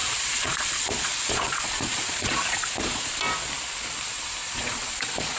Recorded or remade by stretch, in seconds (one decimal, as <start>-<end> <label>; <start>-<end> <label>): 0.0-3.2 remade; 3.2-4.4 recorded; 4.4-5.4 remade